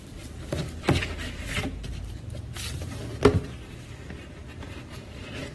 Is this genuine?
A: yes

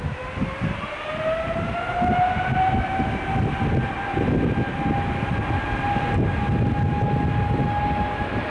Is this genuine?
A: yes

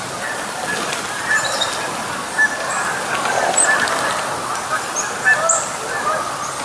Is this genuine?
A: yes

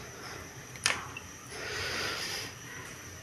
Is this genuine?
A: no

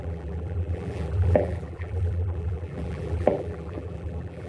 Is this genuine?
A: no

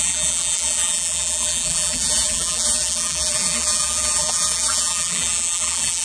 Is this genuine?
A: no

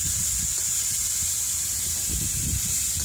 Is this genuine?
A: yes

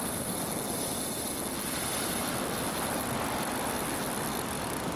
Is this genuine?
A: yes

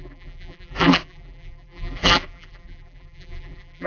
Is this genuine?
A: no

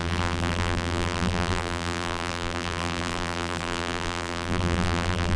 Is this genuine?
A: no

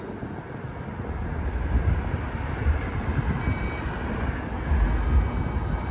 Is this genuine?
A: yes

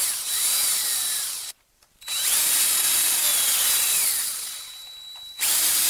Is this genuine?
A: no